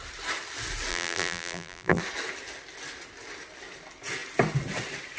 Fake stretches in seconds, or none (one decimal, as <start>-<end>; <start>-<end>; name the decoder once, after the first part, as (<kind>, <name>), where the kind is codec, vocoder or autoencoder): 0.9-2.0 (vocoder, BigVGAN v2)